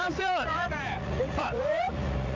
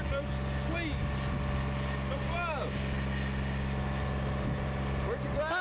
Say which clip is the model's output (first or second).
first